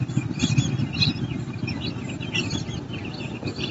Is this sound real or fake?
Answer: real